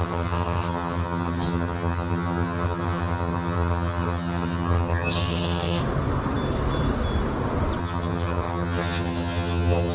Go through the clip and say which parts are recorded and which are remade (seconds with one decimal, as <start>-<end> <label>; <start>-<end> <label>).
0.0-5.8 remade; 5.8-7.8 recorded; 7.8-9.9 remade

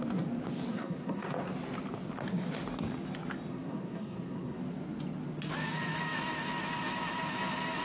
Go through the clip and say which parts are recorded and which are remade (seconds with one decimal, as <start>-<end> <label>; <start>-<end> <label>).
0.0-0.7 recorded; 0.7-1.3 remade; 1.3-3.5 recorded; 3.5-4.6 remade; 4.6-7.8 recorded

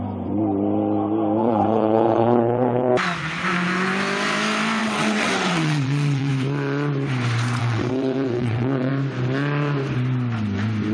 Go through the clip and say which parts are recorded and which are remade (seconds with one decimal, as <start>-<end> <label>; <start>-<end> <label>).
0.0-1.4 recorded; 1.4-2.9 remade; 2.9-4.8 recorded; 4.8-6.3 remade; 6.3-7.6 recorded; 7.6-8.9 remade; 8.9-10.9 recorded

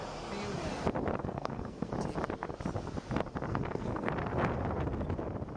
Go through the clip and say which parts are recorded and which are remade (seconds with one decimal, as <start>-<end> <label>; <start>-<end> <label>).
0.0-1.2 recorded; 1.2-1.9 remade; 1.9-3.5 recorded; 3.5-4.1 remade; 4.1-5.6 recorded

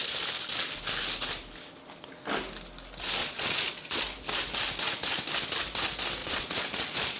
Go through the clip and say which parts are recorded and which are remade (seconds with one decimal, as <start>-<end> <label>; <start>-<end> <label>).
0.0-3.2 recorded; 3.2-4.0 remade; 4.0-6.2 recorded; 6.2-7.2 remade

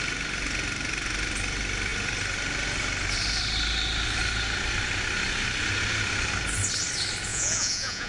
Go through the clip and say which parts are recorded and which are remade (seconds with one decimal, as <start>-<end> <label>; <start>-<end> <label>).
0.0-7.3 recorded; 7.3-8.1 remade

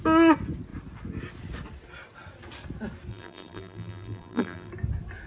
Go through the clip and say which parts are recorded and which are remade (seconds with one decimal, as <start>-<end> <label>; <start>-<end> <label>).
0.0-3.1 recorded; 3.1-4.7 remade; 4.7-5.3 recorded